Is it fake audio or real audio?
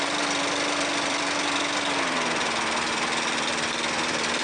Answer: fake